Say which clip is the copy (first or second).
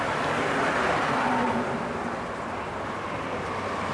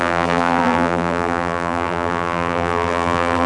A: second